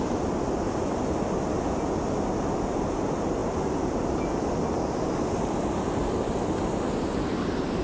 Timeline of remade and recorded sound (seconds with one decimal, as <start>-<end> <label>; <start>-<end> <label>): 0.0-7.8 recorded

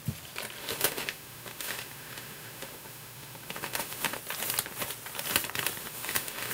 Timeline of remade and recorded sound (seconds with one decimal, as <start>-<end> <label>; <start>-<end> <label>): 0.0-0.6 recorded; 0.6-4.2 remade; 4.2-5.8 recorded; 5.8-6.5 remade

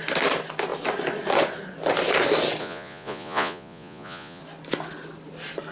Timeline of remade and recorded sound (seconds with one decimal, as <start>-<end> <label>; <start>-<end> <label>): 0.0-2.6 recorded; 2.6-4.4 remade; 4.4-5.7 recorded

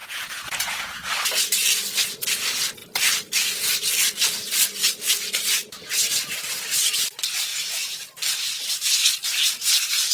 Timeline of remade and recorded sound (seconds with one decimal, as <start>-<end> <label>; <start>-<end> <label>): 0.0-1.4 remade; 1.4-7.5 recorded; 7.5-8.1 remade; 8.1-10.1 recorded

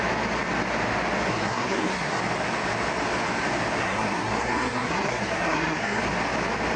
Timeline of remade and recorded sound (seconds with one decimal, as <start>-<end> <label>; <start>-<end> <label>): 0.0-1.3 recorded; 1.3-2.2 remade; 2.2-3.8 recorded; 3.8-6.0 remade; 6.0-6.8 recorded

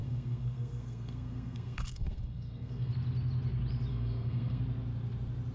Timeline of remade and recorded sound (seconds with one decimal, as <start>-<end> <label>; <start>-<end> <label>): 0.0-2.9 remade; 2.9-3.9 recorded; 3.9-4.6 remade; 4.6-5.5 recorded

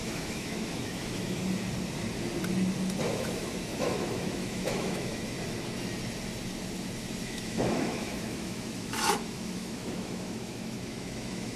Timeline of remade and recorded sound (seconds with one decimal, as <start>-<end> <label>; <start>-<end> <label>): 0.0-1.4 remade; 1.4-3.1 recorded; 3.1-5.2 remade; 5.2-7.2 recorded; 7.2-11.6 remade